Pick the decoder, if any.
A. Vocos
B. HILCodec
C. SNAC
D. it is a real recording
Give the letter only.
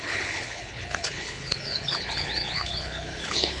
B